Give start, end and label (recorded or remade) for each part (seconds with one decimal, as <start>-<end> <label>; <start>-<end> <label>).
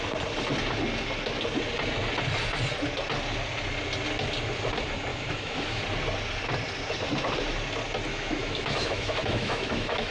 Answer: 0.0-5.1 recorded; 5.1-5.8 remade; 5.8-8.1 recorded; 8.1-10.1 remade